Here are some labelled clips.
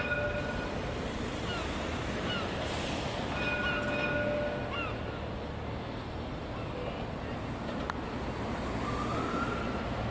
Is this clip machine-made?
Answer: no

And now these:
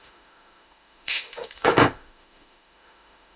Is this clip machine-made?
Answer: yes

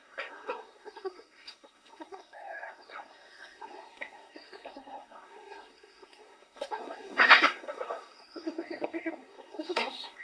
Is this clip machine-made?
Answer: yes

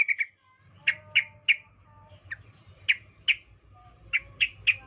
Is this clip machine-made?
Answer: no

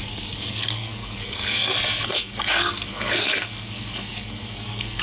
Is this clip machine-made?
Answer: yes